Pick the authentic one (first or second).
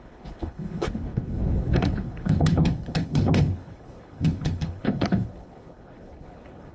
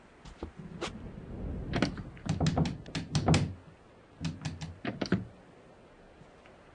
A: second